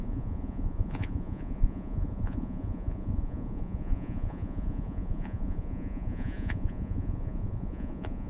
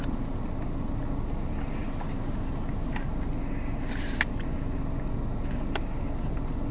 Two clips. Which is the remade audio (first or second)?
first